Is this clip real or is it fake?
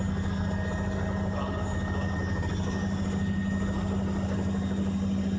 real